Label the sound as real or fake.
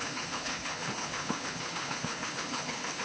fake